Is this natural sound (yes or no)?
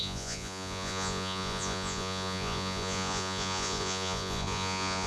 no